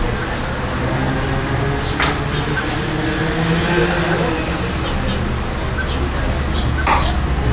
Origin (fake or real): real